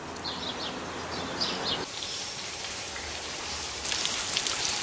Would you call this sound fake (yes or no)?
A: no